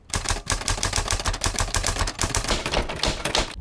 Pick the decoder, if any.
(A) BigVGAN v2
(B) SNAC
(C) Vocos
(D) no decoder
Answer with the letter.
D